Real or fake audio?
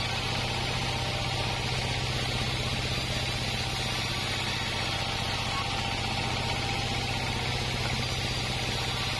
real